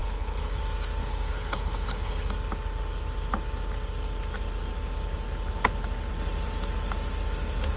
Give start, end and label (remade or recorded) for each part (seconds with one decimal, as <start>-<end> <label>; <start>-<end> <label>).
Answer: 0.0-0.6 remade; 0.6-1.0 recorded; 1.0-2.3 remade; 2.3-7.8 recorded